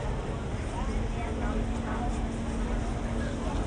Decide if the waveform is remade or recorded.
recorded